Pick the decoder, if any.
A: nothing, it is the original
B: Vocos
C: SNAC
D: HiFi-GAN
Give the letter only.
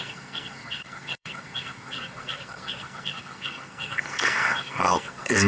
C